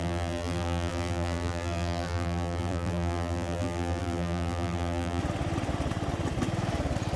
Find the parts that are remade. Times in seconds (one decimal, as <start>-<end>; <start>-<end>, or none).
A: 0.0-5.2